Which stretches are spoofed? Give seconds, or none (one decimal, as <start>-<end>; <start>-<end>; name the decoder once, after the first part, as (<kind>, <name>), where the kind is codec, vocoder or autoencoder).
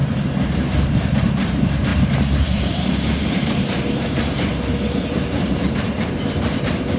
0.0-7.0 (vocoder, BigVGAN v2)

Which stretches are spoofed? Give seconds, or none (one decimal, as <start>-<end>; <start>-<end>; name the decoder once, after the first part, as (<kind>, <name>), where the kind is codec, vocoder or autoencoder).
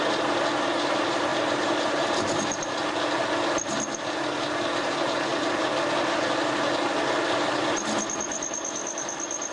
1.3-2.7 (vocoder, BigVGAN v2)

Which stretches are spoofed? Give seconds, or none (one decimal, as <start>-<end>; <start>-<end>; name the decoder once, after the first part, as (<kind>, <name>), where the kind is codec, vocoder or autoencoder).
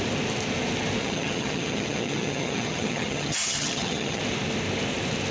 1.0-4.2 (vocoder, HiFi-GAN)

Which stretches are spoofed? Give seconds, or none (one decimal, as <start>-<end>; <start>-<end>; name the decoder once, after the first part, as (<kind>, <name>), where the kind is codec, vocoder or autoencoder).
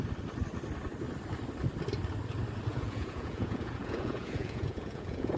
2.7-5.4 (vocoder, Vocos)